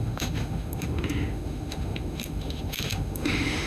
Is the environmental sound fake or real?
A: fake